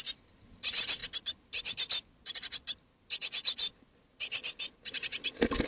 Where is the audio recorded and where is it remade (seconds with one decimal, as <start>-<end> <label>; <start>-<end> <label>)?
0.0-5.7 recorded